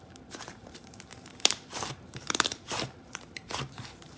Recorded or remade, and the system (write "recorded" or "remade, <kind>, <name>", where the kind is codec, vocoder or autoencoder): remade, vocoder, BigVGAN v2